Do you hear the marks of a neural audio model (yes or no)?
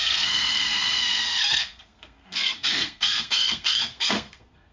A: yes